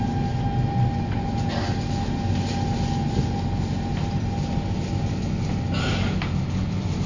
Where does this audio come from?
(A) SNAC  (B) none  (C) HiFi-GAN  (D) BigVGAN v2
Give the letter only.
B